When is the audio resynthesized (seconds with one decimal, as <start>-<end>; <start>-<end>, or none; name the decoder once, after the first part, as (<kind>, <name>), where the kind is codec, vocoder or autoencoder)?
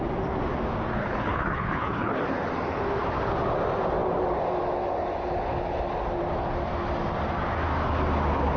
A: 1.0-2.2 (codec, HILCodec)